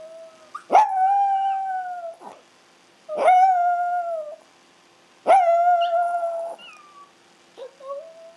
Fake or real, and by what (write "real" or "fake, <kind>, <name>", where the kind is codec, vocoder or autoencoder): real